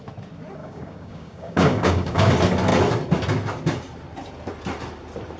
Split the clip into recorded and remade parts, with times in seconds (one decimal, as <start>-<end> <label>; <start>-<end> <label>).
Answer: 0.0-0.6 recorded; 0.6-2.3 remade; 2.3-5.4 recorded